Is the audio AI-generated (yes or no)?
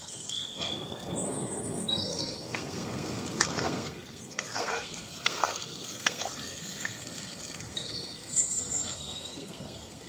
yes